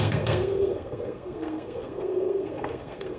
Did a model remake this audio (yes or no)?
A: yes